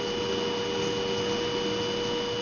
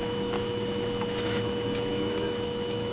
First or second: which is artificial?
second